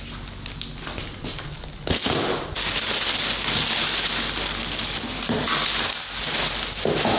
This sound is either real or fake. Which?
real